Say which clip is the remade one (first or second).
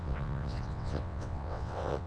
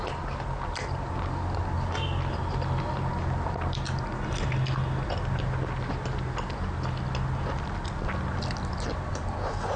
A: first